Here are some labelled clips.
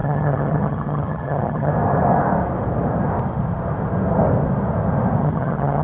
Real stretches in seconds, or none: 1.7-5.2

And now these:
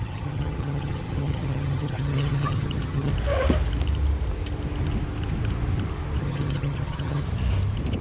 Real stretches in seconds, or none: 3.1-6.2; 7.2-8.0

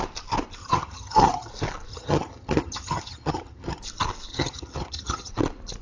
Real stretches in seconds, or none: 0.0-0.6; 1.5-1.9; 3.8-4.3; 5.3-5.8

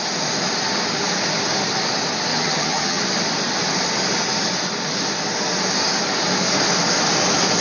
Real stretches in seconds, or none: 0.0-2.3; 3.0-7.6

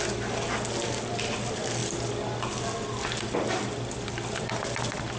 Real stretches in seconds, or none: 0.0-5.2